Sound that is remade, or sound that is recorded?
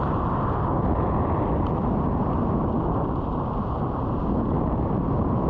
recorded